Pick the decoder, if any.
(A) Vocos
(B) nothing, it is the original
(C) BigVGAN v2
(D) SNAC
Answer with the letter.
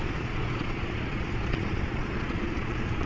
A